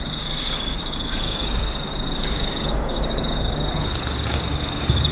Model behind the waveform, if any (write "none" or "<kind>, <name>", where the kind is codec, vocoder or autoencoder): codec, DAC